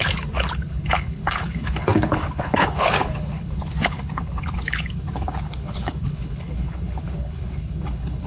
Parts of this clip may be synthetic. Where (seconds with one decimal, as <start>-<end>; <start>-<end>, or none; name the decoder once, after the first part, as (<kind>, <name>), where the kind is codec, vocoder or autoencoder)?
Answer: 0.0-8.3 (codec, HILCodec)